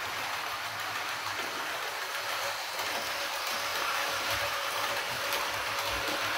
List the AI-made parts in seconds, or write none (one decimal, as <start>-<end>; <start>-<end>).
3.7-5.4